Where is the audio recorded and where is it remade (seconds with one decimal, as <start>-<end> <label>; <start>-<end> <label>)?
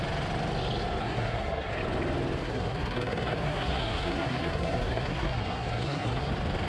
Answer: 0.0-1.0 recorded; 1.0-1.7 remade; 1.7-2.4 recorded; 2.4-6.3 remade; 6.3-6.7 recorded